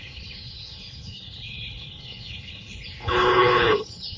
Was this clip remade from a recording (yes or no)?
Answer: yes